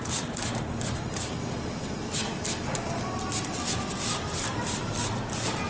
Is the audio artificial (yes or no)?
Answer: no